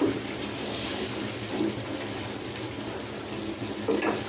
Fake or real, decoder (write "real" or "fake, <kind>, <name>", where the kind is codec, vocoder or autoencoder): real